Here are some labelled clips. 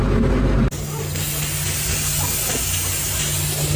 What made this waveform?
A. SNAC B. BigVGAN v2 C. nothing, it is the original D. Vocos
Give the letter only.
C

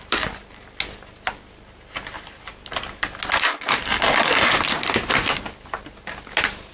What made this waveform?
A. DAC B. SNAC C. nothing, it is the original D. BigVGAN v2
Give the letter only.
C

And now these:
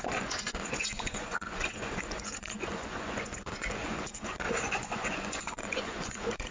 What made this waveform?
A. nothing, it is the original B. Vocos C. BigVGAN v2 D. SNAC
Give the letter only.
B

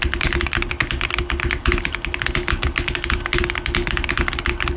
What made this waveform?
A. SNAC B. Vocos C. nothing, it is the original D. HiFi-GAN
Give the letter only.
C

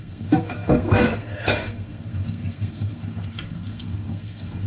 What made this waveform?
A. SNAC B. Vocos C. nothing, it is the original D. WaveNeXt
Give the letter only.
A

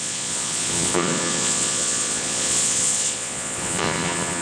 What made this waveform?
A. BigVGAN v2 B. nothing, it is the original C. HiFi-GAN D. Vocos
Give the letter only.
D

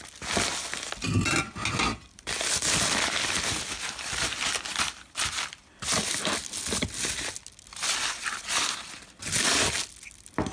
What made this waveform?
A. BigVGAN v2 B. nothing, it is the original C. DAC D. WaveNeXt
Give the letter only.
B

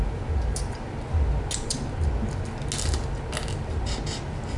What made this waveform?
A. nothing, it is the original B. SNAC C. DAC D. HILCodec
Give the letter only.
A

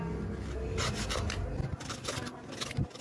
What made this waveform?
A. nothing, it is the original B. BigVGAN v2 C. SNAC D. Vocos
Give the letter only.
A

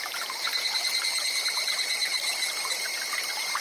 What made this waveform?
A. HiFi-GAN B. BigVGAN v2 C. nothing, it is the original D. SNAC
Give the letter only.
B